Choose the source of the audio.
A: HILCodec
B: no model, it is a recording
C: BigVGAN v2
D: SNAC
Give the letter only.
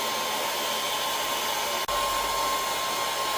B